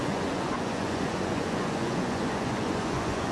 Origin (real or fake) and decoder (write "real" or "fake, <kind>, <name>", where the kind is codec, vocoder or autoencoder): fake, vocoder, Vocos